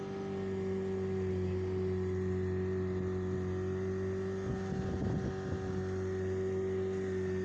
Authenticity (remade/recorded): recorded